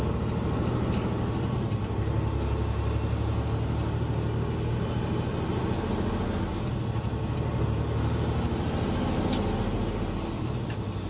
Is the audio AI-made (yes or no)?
no